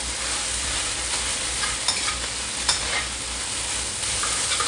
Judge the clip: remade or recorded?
recorded